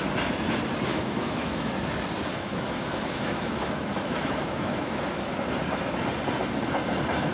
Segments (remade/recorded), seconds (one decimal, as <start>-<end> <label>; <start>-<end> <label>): 0.0-0.9 recorded; 0.9-1.7 remade; 1.7-2.3 recorded; 2.3-5.3 remade; 5.3-7.3 recorded

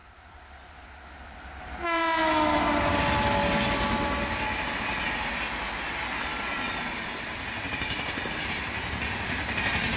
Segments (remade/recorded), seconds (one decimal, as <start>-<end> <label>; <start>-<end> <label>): 0.0-10.0 recorded

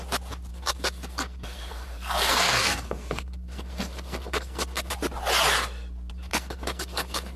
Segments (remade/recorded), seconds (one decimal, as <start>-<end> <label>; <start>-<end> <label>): 0.0-0.5 recorded; 0.5-4.9 remade; 4.9-6.3 recorded; 6.3-7.4 remade

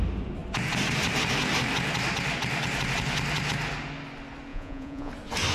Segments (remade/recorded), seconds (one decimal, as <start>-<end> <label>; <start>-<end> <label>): 0.0-4.5 recorded; 4.5-5.1 remade; 5.1-5.5 recorded

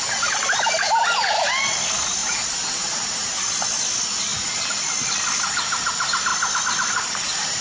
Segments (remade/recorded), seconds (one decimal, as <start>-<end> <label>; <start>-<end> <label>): 0.0-2.2 recorded; 2.2-3.4 remade; 3.4-7.6 recorded